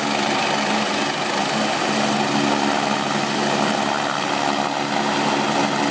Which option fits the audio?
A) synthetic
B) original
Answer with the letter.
B